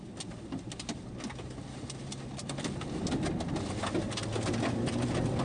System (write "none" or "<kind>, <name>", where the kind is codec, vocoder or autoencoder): vocoder, BigVGAN v2